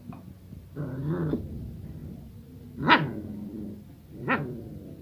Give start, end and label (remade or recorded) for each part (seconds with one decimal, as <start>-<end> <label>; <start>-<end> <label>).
0.0-5.0 recorded